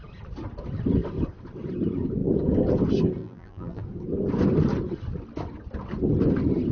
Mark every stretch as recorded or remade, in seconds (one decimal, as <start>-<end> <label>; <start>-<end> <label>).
0.0-3.2 recorded; 3.2-3.8 remade; 3.8-6.7 recorded